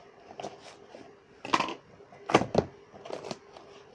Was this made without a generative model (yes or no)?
yes